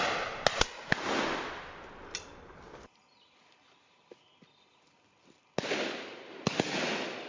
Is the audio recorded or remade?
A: recorded